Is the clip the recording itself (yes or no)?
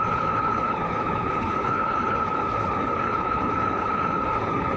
no